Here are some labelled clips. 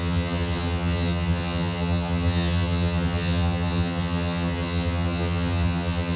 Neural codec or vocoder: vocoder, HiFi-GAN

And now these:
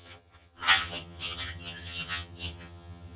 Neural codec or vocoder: vocoder, HiFi-GAN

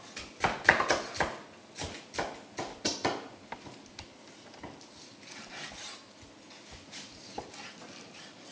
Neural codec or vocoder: none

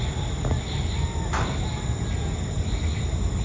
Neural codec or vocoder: none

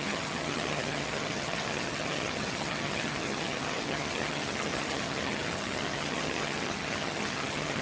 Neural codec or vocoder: vocoder, HiFi-GAN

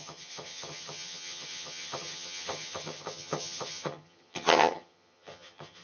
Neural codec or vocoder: vocoder, HiFi-GAN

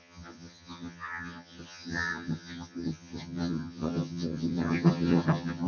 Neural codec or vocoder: vocoder, HiFi-GAN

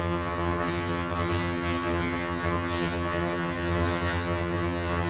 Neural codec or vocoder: vocoder, HiFi-GAN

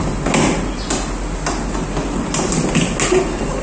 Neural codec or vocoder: none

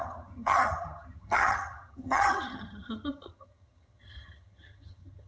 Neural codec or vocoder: vocoder, HiFi-GAN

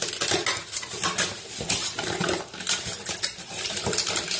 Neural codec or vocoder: none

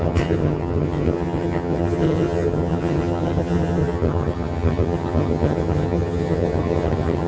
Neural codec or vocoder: vocoder, HiFi-GAN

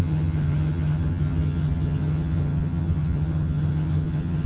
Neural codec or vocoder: vocoder, HiFi-GAN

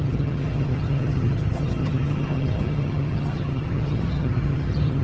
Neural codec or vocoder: vocoder, HiFi-GAN